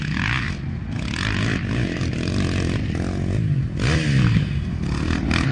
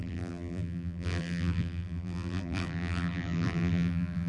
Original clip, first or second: first